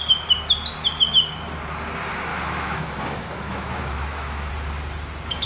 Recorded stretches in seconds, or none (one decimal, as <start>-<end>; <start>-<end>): 0.0-2.3; 4.5-5.5